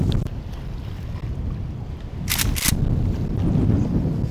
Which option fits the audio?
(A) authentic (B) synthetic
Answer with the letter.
A